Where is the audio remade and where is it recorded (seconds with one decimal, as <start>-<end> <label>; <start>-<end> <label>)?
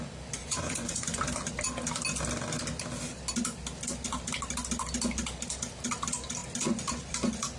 0.0-0.4 recorded; 0.4-1.2 remade; 1.2-7.6 recorded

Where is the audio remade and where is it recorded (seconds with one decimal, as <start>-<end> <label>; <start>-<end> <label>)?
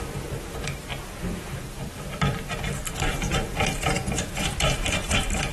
0.0-5.5 recorded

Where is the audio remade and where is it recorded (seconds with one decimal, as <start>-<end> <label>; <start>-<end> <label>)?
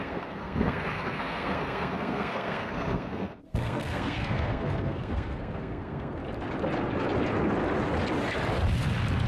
0.0-6.2 remade; 6.2-9.3 recorded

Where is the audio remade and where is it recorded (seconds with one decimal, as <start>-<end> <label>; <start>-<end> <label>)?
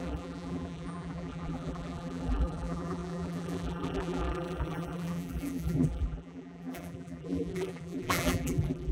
0.0-8.9 remade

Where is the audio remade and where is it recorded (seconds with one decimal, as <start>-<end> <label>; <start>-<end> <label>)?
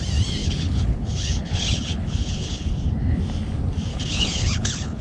0.0-0.4 recorded; 0.4-2.7 remade; 2.7-3.9 recorded; 3.9-5.0 remade